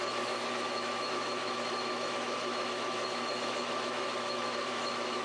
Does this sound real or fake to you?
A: fake